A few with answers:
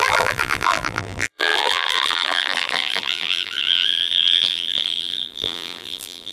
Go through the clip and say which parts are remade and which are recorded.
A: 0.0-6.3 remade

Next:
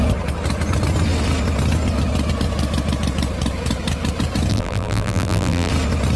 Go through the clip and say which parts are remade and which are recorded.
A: 0.0-4.5 recorded; 4.5-5.7 remade; 5.7-6.2 recorded

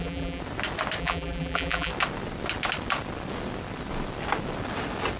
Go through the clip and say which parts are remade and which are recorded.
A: 0.0-0.4 remade; 0.4-1.0 recorded; 1.0-1.9 remade; 1.9-5.2 recorded

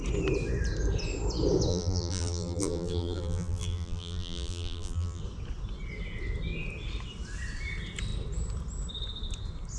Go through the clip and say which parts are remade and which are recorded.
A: 0.0-1.7 recorded; 1.7-5.2 remade; 5.2-9.8 recorded

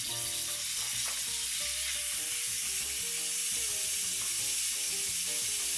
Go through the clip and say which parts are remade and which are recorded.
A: 0.0-5.8 recorded

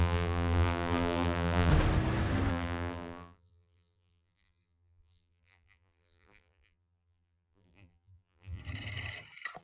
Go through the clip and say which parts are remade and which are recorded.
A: 0.0-1.7 remade; 1.7-2.5 recorded; 2.5-8.6 remade; 8.6-9.6 recorded